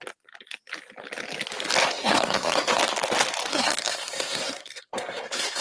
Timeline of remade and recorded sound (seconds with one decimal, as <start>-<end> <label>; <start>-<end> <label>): 0.0-1.9 recorded; 1.9-2.8 remade; 2.8-3.5 recorded; 3.5-5.6 remade